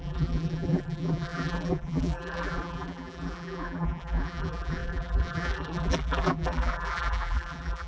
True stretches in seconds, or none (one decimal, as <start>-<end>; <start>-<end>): none